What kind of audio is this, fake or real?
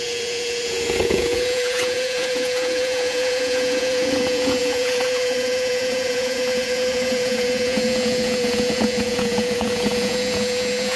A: fake